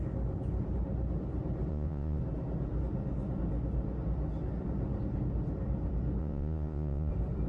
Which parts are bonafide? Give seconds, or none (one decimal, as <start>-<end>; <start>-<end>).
0.0-1.7; 2.2-6.2; 7.1-7.5